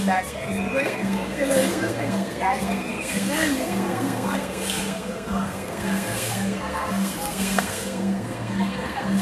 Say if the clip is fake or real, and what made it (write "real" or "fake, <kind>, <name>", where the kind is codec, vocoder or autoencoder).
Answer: fake, codec, SNAC